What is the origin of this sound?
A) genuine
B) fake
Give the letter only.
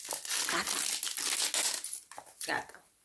A